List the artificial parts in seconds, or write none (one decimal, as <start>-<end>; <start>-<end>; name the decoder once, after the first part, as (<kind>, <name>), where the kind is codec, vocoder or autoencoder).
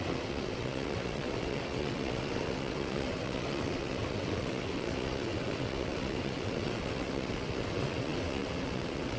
0.0-9.2 (vocoder, WaveNeXt)